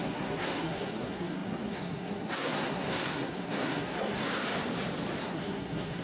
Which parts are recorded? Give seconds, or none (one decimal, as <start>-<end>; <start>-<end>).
4.2-5.2